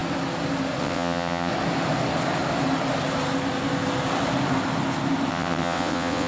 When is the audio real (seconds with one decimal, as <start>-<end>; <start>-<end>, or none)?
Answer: 0.0-0.8; 1.5-5.3